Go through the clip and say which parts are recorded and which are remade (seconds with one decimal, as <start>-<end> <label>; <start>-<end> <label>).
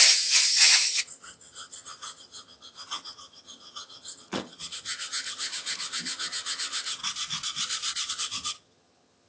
0.0-7.0 remade; 7.0-8.1 recorded; 8.1-9.3 remade